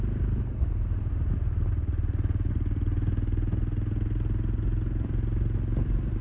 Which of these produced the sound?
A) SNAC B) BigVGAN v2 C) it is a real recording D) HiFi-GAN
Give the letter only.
C